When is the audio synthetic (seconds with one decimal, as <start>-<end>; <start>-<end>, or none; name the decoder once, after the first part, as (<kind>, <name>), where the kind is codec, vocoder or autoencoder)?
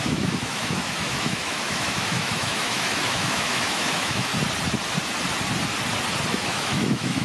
0.0-4.3 (autoencoder, DAC-VAE); 6.3-7.2